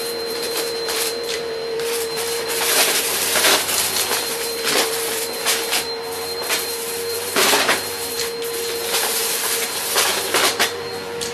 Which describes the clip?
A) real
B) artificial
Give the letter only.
B